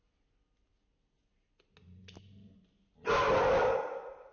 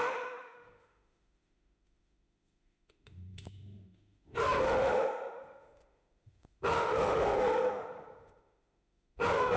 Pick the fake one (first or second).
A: second